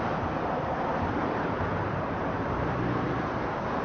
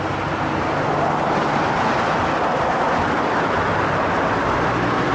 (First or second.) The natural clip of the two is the second